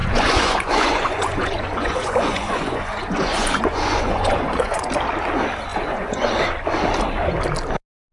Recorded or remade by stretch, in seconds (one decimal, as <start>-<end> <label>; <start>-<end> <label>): 0.0-4.9 remade; 4.9-5.7 recorded; 5.7-6.3 remade; 6.3-8.1 recorded